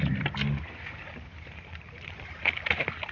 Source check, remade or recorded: recorded